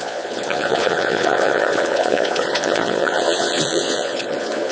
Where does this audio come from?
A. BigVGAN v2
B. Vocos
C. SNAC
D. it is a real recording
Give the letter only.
B